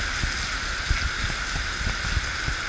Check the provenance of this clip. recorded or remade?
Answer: recorded